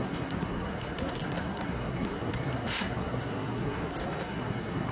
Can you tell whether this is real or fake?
fake